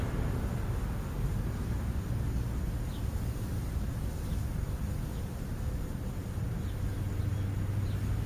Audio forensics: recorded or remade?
recorded